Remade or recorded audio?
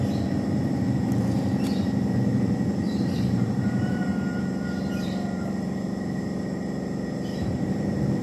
remade